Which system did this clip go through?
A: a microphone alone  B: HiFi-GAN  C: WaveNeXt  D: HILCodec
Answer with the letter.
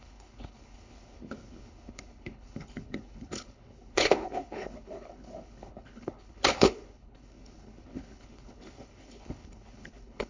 D